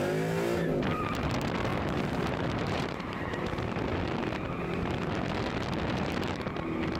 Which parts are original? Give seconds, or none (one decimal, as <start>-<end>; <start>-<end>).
0.0-1.7; 3.8-7.0